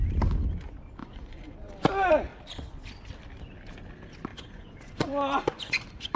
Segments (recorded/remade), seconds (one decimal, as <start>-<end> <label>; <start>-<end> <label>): 0.0-1.0 recorded; 1.0-1.7 remade; 1.7-4.3 recorded; 4.3-6.2 remade